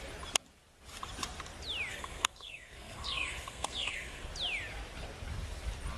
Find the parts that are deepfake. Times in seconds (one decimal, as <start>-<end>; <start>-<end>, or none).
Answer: 1.9-4.3